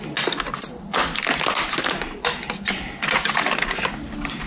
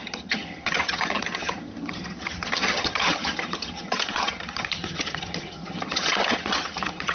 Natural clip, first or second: first